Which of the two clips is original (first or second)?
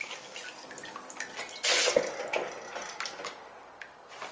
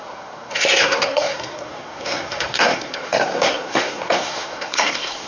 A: first